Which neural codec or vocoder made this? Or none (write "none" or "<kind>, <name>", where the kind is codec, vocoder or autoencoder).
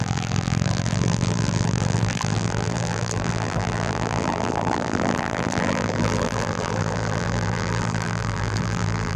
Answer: vocoder, BigVGAN v2